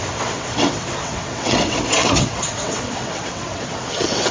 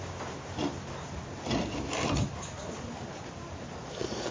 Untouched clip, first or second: second